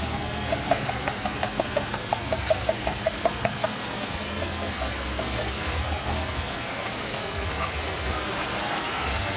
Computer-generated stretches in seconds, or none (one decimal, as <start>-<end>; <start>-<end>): 0.0-9.4